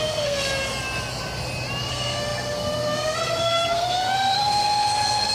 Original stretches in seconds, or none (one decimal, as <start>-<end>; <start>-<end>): 0.5-1.9